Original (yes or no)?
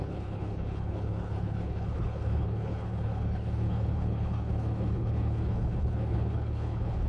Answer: no